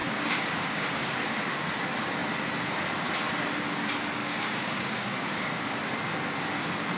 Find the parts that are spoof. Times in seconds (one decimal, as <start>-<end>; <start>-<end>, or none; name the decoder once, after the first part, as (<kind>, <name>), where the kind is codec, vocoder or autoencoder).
0.0-1.1 (codec, DAC); 4.2-5.8